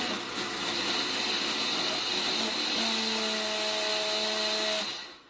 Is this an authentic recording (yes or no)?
yes